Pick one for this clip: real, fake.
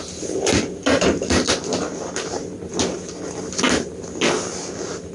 real